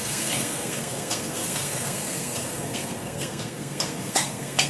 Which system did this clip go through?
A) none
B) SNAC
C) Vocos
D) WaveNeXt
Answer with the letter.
B